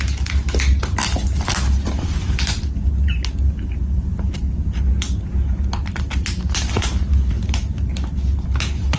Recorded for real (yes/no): yes